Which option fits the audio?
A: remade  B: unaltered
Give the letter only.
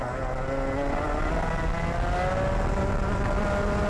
B